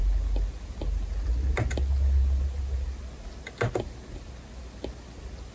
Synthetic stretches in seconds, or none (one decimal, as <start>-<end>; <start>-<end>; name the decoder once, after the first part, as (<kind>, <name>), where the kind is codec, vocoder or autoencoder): none